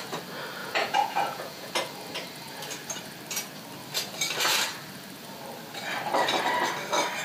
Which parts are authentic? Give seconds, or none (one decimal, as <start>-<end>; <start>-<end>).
0.0-0.6; 1.7-7.2